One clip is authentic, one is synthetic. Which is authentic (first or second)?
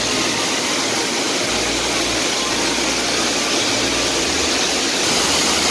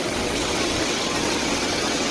first